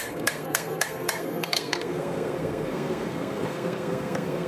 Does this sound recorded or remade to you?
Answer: remade